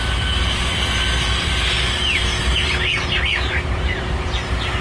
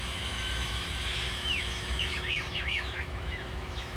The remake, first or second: second